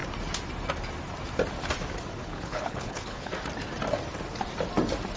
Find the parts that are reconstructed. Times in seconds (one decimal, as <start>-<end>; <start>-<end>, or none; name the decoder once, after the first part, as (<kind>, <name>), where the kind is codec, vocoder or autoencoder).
2.2-3.3 (codec, HILCodec)